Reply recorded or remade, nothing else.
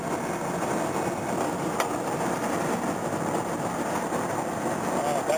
recorded